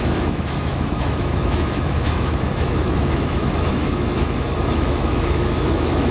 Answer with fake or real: fake